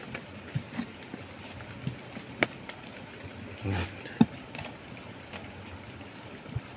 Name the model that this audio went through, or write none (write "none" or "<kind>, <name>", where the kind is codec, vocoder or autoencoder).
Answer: none